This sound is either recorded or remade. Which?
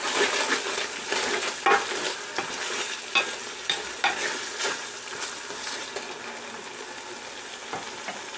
recorded